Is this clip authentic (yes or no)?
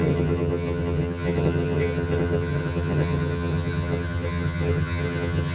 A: no